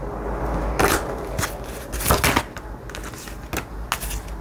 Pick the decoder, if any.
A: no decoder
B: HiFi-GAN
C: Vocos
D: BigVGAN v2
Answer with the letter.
A